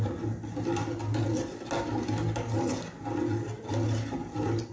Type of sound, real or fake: real